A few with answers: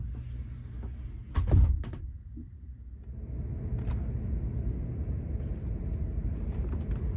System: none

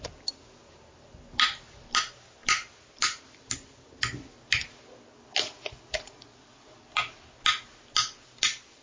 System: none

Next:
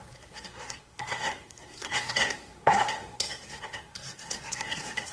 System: codec, SNAC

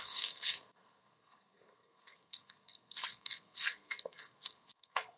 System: codec, SNAC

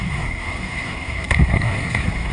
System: codec, SNAC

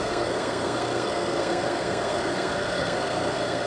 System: codec, SNAC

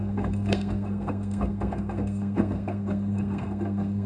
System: codec, SNAC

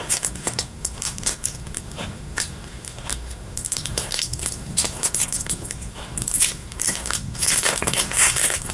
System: codec, SNAC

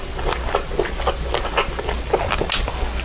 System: none